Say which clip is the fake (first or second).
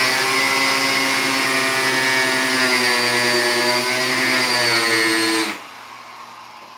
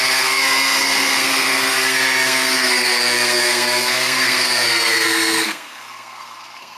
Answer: second